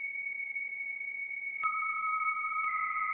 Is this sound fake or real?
fake